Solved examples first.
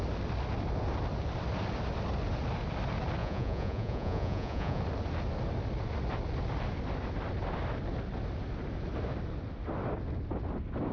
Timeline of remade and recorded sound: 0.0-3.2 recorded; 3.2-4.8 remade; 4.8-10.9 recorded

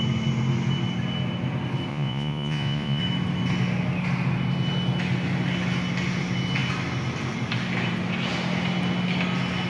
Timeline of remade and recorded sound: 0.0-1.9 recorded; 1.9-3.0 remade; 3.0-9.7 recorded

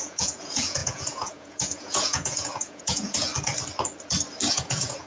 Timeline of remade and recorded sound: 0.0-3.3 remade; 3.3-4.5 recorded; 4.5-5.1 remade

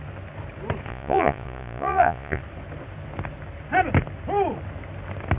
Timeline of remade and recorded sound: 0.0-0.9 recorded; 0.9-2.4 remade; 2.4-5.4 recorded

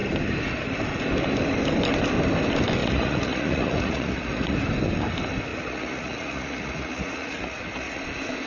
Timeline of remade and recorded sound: 0.0-2.8 recorded; 2.8-4.6 remade; 4.6-5.5 recorded; 5.5-8.0 remade; 8.0-8.5 recorded

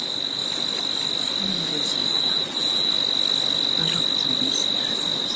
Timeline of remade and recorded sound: 0.0-2.1 recorded; 2.1-2.9 remade; 2.9-5.4 recorded